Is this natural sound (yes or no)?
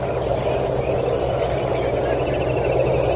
yes